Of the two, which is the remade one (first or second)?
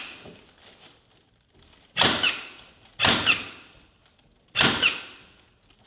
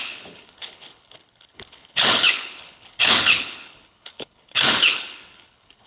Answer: second